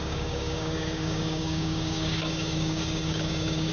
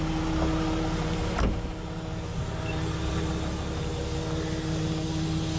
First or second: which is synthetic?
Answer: first